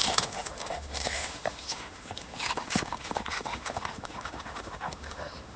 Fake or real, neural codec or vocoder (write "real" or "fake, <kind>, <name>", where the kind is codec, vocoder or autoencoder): fake, autoencoder, DAC-VAE